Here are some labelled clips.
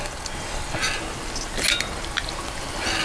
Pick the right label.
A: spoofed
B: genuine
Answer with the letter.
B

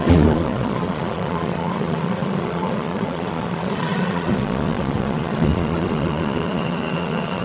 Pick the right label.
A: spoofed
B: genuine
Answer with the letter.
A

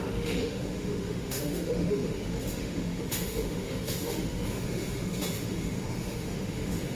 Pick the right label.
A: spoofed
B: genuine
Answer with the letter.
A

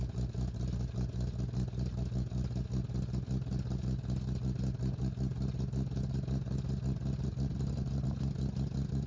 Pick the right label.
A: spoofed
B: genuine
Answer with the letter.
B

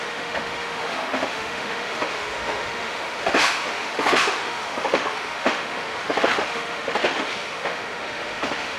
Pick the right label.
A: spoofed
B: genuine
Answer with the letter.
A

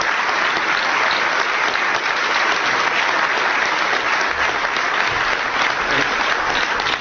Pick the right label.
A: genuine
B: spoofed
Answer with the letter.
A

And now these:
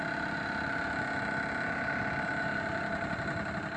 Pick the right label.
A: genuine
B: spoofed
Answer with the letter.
A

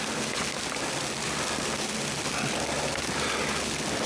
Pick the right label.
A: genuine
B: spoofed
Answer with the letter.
A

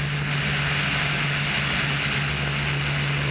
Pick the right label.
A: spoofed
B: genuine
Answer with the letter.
B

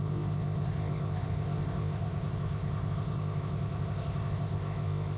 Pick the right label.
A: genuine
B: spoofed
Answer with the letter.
B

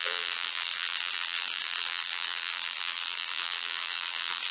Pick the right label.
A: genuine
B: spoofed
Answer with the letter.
B